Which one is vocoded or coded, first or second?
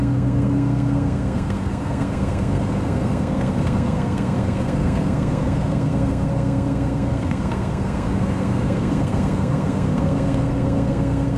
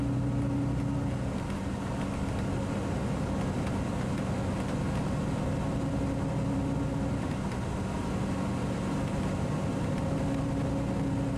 first